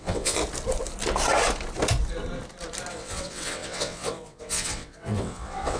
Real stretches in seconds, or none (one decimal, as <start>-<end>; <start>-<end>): 0.4-2.9